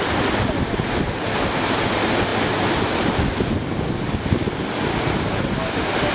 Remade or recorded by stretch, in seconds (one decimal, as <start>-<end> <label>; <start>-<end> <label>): 0.0-6.1 recorded